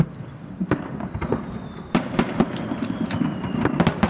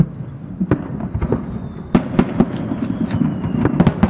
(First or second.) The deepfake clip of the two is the first